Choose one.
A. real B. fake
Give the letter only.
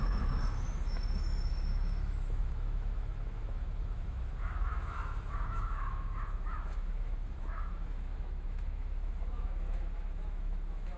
B